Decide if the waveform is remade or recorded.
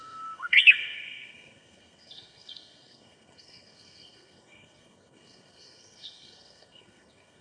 remade